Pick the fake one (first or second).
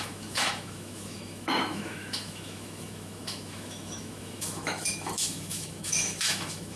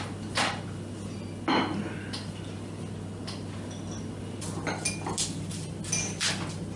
first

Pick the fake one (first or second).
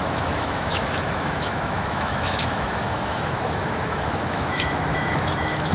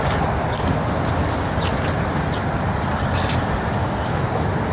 first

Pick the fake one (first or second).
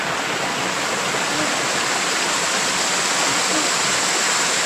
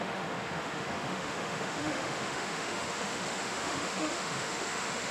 second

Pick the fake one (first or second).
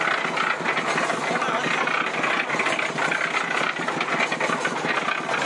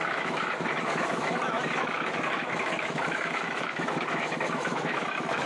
second